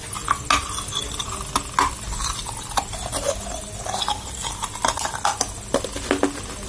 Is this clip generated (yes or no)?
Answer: no